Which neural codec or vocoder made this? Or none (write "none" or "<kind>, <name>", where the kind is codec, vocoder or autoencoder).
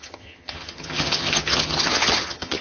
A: vocoder, HiFi-GAN